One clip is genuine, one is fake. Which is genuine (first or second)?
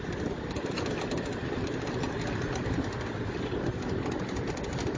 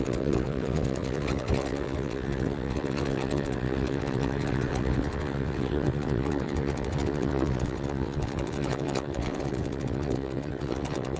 first